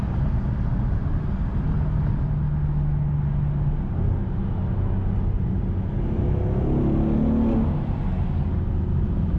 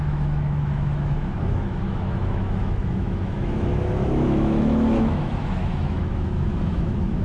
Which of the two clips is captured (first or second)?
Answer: first